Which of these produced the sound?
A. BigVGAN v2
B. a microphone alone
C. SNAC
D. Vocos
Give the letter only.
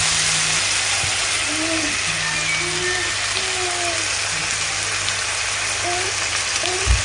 B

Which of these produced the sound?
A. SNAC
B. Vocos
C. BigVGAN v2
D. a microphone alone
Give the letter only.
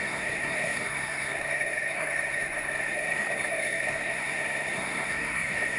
A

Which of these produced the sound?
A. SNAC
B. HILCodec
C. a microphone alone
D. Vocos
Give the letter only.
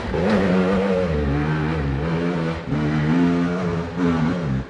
C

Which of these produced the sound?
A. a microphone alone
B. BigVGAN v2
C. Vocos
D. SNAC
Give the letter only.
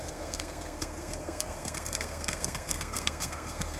D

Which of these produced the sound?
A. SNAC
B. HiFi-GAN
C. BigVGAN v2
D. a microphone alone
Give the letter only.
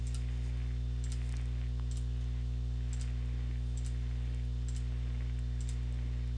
D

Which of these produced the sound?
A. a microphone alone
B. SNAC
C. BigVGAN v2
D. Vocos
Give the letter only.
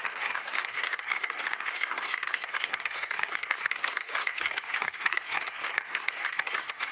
B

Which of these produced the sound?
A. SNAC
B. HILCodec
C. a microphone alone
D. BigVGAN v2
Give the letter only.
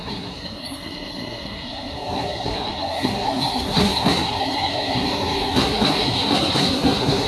A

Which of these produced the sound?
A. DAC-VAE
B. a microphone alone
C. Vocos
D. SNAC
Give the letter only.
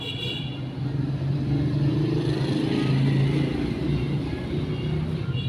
B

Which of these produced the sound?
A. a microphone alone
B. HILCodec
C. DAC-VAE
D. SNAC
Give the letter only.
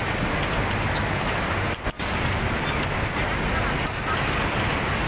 A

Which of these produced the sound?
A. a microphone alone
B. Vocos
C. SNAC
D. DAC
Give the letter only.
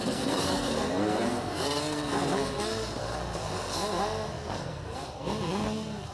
C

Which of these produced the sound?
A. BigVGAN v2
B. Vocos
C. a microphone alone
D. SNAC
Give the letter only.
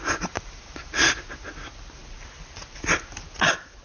C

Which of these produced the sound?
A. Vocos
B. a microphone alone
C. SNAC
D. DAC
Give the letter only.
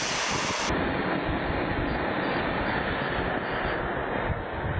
B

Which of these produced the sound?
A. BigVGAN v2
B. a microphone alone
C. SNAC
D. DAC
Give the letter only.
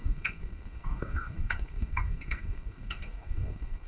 C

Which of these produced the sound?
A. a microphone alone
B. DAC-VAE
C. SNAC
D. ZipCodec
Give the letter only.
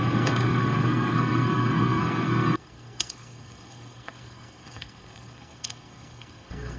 C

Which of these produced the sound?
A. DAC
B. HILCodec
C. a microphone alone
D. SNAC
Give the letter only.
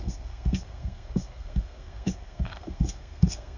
D